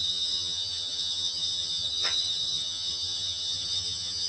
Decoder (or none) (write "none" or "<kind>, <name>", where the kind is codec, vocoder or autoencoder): vocoder, HiFi-GAN